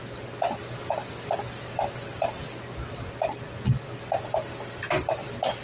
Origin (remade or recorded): recorded